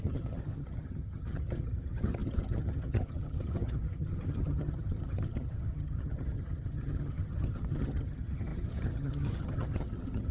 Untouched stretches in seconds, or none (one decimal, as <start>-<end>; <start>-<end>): none